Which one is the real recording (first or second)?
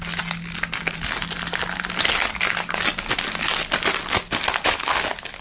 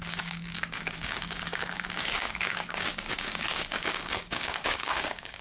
first